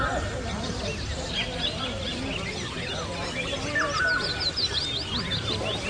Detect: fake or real real